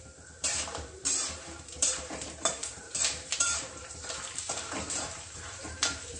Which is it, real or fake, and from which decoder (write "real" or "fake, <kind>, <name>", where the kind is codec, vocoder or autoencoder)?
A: fake, vocoder, BigVGAN v2